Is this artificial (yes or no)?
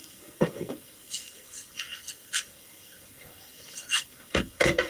yes